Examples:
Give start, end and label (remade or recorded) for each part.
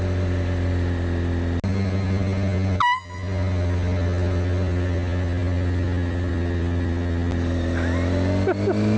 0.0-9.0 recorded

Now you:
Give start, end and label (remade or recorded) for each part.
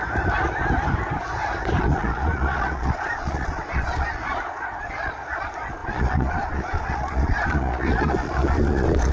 0.0-1.8 recorded; 1.8-9.1 remade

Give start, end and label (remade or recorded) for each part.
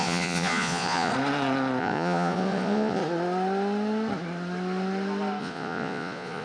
0.0-1.1 remade; 1.1-1.8 recorded; 1.8-3.0 remade; 3.0-5.4 recorded; 5.4-6.4 remade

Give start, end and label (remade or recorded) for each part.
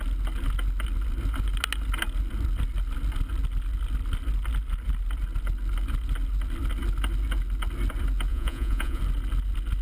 0.0-8.3 recorded; 8.3-9.0 remade; 9.0-9.8 recorded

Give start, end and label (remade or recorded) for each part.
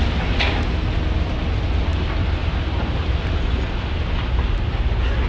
0.0-5.3 recorded